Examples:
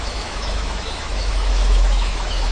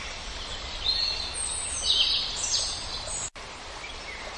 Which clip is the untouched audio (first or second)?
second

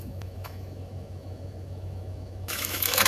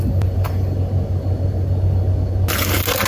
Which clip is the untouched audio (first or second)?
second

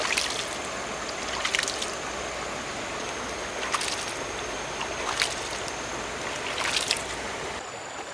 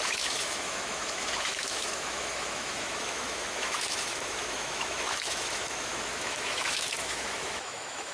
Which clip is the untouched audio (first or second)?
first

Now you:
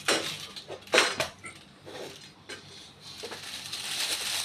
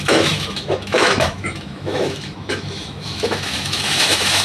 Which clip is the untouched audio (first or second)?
first